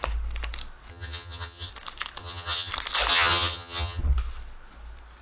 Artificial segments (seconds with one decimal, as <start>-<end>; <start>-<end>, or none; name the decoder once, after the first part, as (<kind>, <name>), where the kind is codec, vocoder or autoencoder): 0.9-1.7 (vocoder, HiFi-GAN); 2.2-2.7; 3.1-4.0